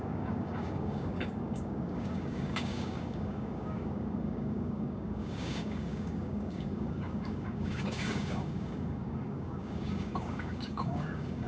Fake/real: fake